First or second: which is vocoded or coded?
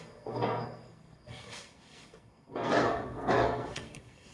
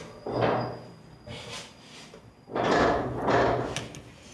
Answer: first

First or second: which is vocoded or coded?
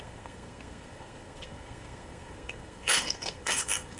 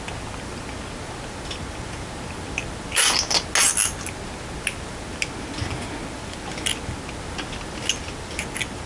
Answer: first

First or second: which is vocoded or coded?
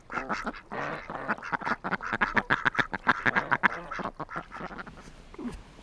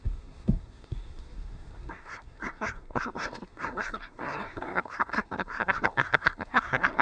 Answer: second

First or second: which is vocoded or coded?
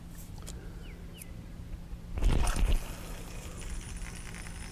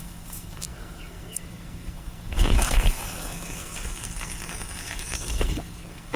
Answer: second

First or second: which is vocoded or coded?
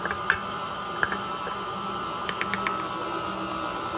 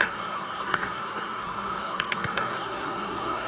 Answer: second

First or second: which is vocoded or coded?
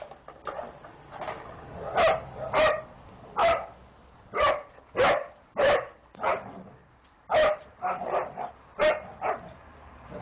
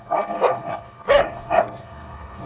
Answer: second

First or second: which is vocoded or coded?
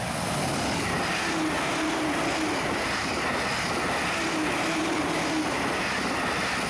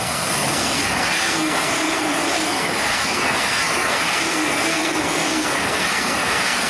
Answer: second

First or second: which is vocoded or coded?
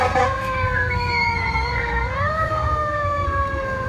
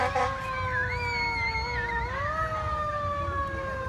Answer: first